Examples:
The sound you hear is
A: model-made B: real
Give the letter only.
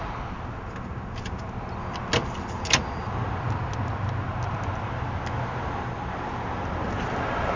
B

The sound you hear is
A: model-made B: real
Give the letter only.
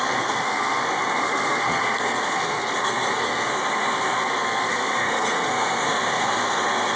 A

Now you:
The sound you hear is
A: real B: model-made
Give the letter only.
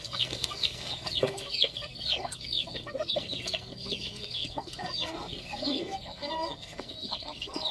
B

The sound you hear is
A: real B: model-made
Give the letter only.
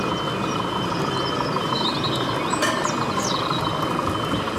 A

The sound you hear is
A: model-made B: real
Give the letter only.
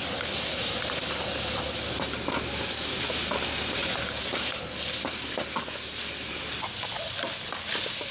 B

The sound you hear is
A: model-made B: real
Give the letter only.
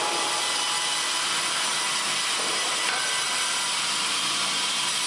B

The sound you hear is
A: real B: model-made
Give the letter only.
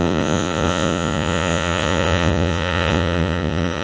B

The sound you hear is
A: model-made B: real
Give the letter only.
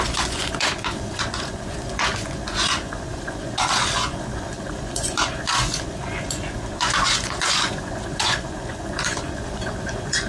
A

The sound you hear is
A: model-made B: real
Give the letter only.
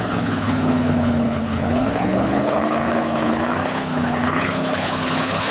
A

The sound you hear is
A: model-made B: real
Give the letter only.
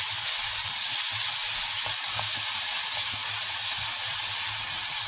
B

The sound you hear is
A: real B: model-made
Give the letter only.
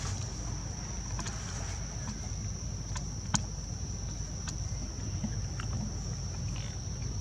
A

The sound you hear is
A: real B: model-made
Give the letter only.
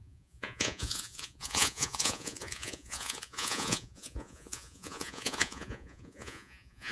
B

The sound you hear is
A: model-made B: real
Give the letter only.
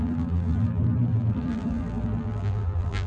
A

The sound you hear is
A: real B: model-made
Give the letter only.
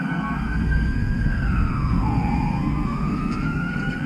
B